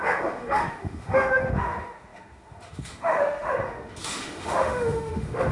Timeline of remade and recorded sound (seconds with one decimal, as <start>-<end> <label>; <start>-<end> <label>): 0.0-5.5 remade